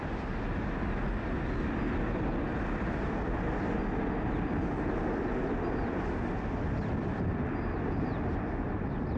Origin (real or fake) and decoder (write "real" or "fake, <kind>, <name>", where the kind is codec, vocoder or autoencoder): real